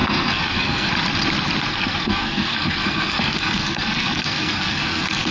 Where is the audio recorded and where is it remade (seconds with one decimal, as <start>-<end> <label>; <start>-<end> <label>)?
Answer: 0.0-0.9 remade; 0.9-1.7 recorded; 1.7-5.3 remade